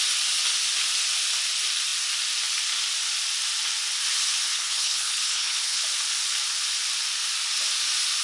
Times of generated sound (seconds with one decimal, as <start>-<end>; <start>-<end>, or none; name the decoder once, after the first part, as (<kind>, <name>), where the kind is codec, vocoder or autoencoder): 4.5-5.8 (codec, HILCodec)